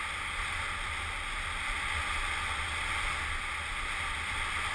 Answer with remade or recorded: recorded